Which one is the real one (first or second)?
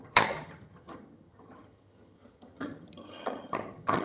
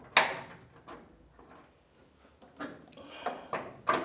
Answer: second